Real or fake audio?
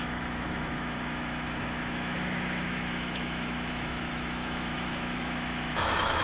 fake